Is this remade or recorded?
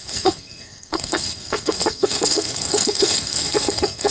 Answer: remade